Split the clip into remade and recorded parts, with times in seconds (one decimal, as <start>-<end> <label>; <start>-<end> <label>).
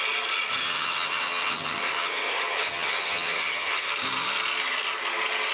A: 0.0-0.6 recorded; 0.6-3.9 remade; 3.9-5.5 recorded